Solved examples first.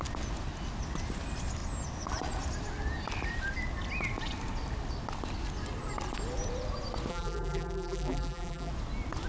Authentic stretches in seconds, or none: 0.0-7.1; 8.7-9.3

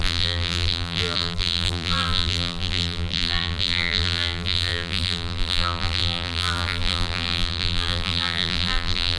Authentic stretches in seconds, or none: none

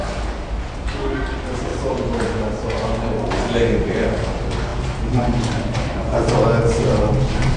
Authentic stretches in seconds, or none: 0.0-1.7; 2.4-7.6

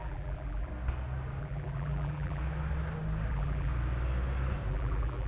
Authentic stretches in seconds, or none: 0.7-1.4; 2.4-3.3; 3.7-4.7

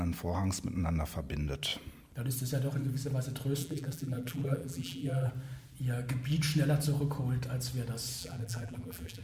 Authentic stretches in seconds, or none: 0.0-3.6; 5.3-8.2

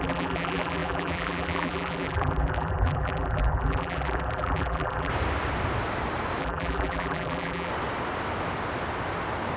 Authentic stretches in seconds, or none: 5.1-6.4; 7.7-9.6

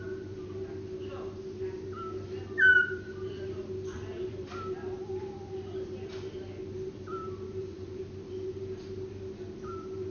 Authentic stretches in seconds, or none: 0.0-2.7; 3.3-4.1; 6.1-7.1; 8.0-10.1

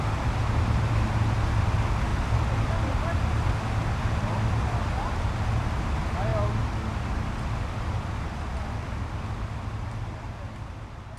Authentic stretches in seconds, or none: 2.1-5.3; 8.5-9.7